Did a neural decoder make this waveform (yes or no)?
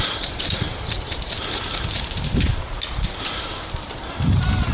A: yes